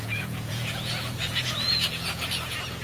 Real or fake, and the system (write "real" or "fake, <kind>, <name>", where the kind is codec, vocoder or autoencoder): fake, vocoder, Vocos